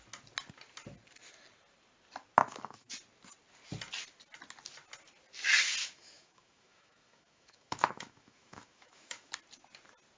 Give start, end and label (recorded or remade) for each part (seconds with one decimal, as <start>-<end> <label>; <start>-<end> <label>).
0.0-2.4 recorded; 2.4-2.9 remade; 2.9-5.8 recorded; 5.8-9.3 remade; 9.3-10.2 recorded